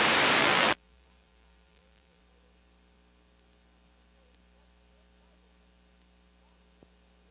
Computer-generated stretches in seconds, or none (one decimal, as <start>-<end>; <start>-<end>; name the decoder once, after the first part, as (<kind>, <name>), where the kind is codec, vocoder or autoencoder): 0.4-2.2 (vocoder, BigVGAN v2)